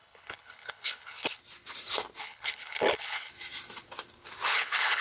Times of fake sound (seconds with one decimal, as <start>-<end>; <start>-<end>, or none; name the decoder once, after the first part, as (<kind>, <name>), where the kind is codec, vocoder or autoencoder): 0.0-1.4 (codec, HILCodec); 2.2-3.3; 4.5-5.0